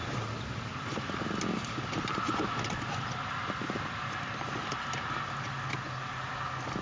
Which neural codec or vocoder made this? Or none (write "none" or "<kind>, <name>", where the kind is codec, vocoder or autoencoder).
none